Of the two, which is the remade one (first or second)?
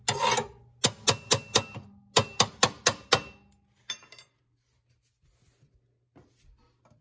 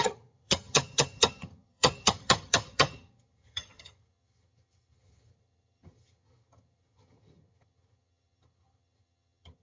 second